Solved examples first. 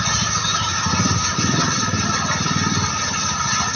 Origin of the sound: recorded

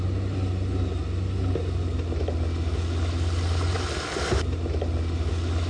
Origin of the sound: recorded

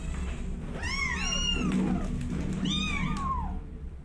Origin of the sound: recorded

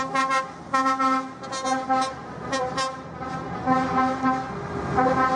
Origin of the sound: recorded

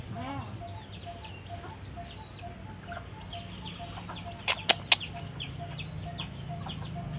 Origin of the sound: recorded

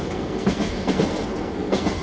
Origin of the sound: remade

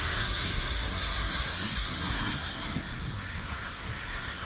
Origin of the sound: remade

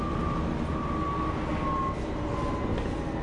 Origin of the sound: recorded